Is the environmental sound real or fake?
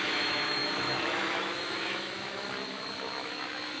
fake